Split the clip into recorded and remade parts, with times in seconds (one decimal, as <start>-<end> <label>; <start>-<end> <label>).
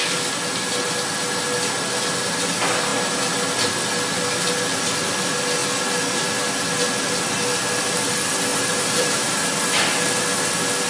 0.0-8.5 recorded; 8.5-9.4 remade; 9.4-10.9 recorded